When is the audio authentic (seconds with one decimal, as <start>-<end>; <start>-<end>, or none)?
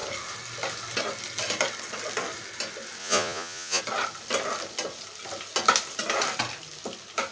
0.0-3.0; 3.8-7.3